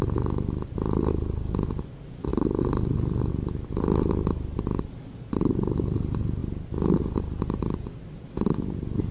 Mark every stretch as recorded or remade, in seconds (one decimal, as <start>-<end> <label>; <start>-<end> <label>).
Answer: 0.0-9.1 recorded

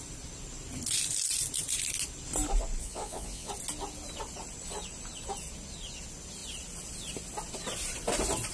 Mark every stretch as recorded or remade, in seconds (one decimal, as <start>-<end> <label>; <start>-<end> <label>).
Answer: 0.0-2.8 recorded; 2.8-3.5 remade; 3.5-8.5 recorded

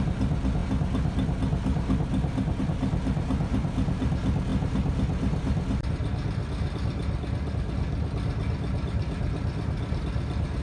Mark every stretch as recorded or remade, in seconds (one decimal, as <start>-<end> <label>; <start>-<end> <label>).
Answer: 0.0-10.6 recorded

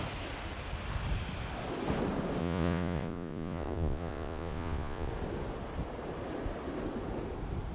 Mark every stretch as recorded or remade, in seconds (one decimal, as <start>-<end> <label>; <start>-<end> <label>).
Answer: 0.0-2.4 recorded; 2.4-5.1 remade; 5.1-7.7 recorded